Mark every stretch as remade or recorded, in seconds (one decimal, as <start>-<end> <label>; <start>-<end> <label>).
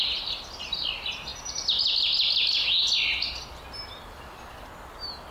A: 0.0-5.3 recorded